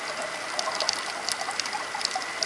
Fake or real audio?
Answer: real